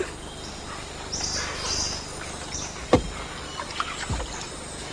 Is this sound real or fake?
real